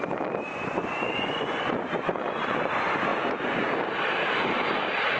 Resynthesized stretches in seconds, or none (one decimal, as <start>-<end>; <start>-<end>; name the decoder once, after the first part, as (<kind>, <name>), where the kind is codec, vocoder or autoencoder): 0.5-2.7 (vocoder, Vocos); 3.1-3.7